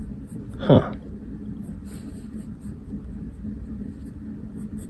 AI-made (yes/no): no